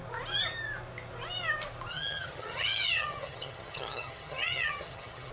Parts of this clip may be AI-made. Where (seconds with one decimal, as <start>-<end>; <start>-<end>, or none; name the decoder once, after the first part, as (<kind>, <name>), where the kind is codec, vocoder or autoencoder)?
1.9-5.3 (vocoder, HiFi-GAN)